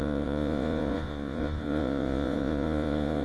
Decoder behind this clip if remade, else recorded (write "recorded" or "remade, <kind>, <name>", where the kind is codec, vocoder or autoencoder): remade, vocoder, Vocos